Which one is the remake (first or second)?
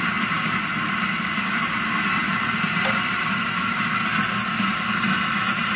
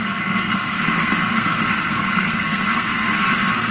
second